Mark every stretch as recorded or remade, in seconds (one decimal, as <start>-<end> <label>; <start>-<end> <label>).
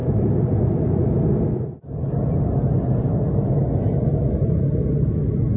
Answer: 0.0-5.6 recorded